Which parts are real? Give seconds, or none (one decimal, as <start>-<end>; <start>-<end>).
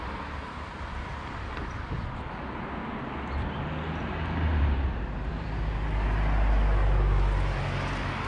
0.0-4.5; 5.3-8.3